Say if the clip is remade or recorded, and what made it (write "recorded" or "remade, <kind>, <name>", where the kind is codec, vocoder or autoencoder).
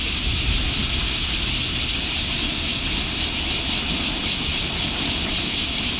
recorded